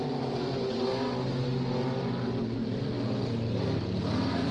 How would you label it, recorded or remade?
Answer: recorded